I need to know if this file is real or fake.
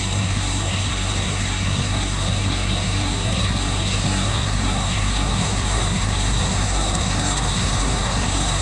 fake